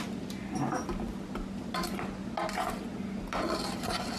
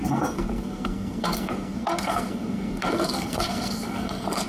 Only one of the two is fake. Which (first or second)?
second